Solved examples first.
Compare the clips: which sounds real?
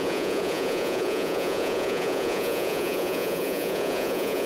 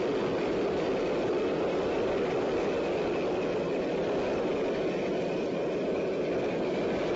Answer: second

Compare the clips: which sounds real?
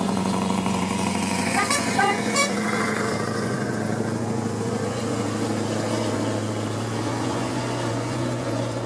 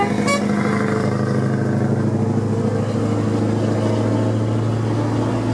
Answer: second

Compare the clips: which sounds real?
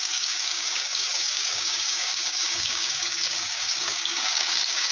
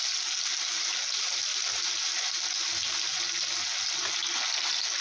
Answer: second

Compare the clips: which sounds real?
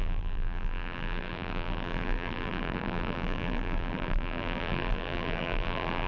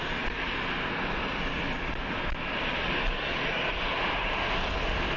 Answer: second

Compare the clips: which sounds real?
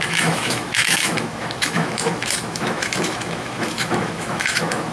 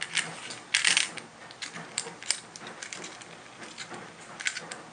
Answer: second